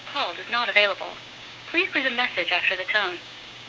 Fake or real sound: fake